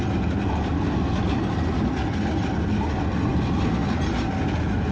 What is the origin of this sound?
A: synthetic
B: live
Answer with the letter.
B